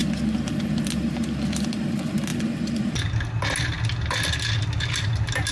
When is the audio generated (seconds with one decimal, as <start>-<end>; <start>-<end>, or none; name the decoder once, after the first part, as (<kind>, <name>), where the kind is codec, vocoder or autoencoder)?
none